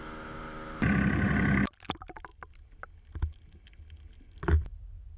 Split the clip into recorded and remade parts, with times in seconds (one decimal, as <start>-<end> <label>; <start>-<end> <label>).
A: 0.0-5.2 recorded